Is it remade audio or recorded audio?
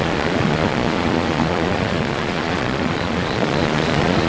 remade